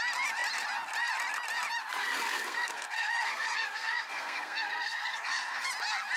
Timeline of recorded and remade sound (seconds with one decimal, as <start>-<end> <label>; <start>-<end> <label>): 0.0-2.0 recorded; 2.0-5.7 remade; 5.7-6.2 recorded